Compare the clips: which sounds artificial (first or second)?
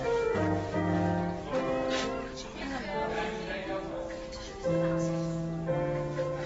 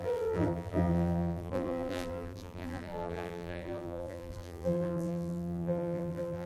second